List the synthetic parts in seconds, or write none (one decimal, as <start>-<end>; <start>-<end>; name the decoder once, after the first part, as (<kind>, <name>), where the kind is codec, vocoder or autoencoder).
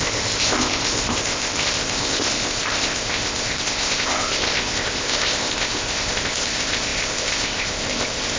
0.0-8.4 (codec, ZipCodec)